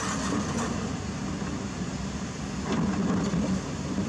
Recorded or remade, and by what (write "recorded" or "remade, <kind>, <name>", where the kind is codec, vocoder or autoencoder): recorded